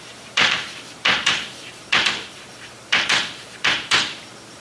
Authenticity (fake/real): fake